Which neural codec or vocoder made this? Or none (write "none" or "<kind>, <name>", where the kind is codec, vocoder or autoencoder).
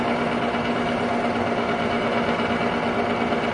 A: none